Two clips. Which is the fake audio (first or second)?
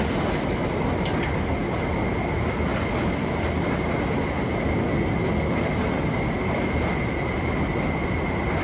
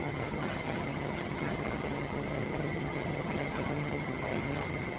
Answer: second